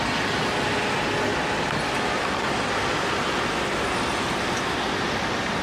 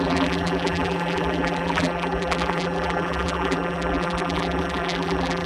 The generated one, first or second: second